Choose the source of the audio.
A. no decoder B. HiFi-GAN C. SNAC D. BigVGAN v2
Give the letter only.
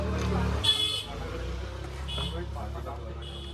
A